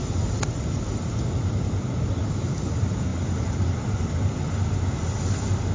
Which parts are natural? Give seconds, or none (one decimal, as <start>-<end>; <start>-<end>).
0.0-5.7